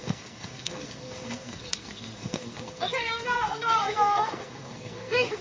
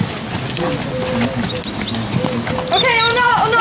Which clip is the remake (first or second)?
first